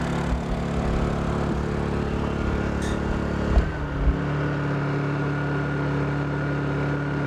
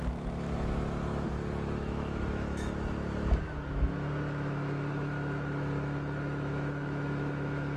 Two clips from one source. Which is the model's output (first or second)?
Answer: second